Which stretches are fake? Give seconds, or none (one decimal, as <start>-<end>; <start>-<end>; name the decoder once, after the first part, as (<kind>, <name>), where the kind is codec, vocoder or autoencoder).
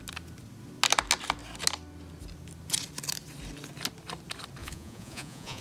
4.6-5.6 (vocoder, Vocos)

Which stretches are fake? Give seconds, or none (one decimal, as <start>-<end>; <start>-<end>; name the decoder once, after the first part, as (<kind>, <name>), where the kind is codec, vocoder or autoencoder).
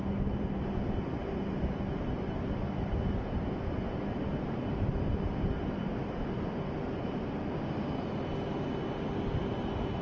none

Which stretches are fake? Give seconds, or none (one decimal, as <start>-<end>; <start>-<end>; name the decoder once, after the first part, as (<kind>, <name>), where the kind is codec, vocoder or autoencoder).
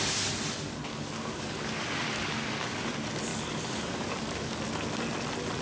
0.9-2.9 (codec, DAC); 3.3-4.6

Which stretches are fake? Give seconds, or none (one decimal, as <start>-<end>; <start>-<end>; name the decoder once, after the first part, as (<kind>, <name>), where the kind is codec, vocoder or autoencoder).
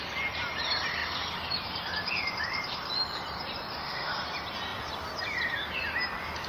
3.7-4.2 (autoencoder, DAC-VAE)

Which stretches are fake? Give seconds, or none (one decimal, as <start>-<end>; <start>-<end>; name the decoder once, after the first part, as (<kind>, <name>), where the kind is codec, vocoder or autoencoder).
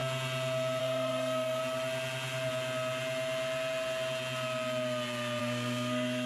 0.8-1.6 (codec, SNAC); 5.4-6.3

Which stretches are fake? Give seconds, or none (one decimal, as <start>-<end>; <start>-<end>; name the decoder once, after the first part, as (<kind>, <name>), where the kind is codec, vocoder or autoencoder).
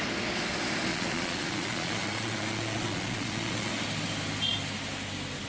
0.9-3.7 (vocoder, Vocos)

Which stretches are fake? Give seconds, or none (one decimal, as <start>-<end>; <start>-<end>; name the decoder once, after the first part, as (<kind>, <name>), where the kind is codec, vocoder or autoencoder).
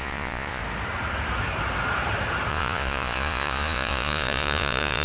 0.0-0.6 (vocoder, Vocos); 2.5-5.0